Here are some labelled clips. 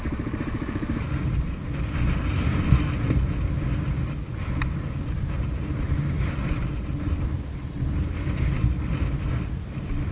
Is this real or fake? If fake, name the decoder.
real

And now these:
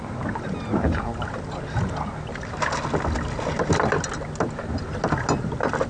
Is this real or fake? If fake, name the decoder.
real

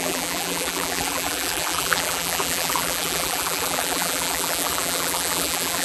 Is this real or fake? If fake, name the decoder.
fake, vocoder, BigVGAN v2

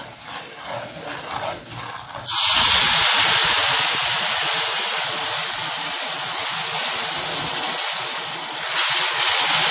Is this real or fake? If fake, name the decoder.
real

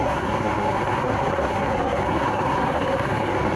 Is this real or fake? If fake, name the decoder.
fake, codec, SNAC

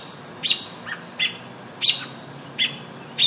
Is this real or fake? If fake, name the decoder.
real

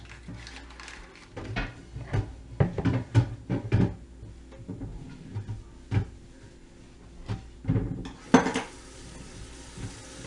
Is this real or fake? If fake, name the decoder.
real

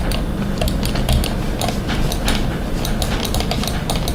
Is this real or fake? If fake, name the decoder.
real